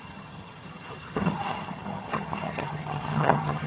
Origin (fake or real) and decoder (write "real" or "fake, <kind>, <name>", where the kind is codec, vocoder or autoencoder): fake, vocoder, HiFi-GAN